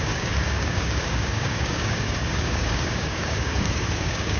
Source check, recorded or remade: remade